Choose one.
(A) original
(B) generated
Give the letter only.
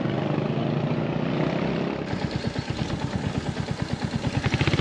A